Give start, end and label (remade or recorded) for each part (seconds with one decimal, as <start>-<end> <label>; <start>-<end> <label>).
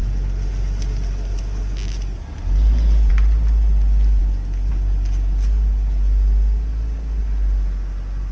0.0-8.3 recorded